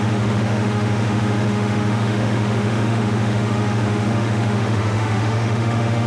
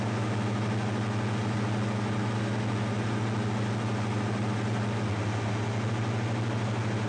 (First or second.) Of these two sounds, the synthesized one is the first